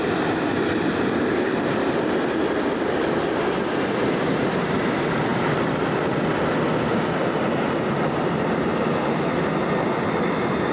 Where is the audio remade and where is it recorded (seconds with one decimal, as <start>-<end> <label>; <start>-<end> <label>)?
0.0-10.7 recorded